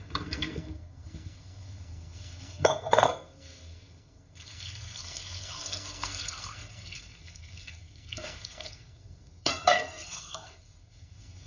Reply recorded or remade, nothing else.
remade